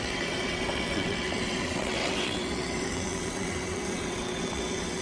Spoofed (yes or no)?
yes